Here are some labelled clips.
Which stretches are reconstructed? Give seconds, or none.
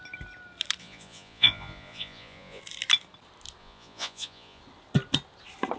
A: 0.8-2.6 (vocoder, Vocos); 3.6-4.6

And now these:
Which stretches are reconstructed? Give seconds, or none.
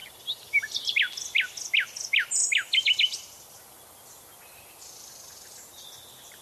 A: none